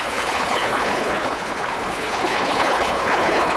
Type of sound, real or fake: fake